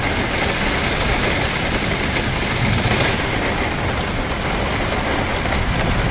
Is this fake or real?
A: real